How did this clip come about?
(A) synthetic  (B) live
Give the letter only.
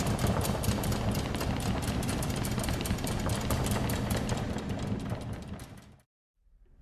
A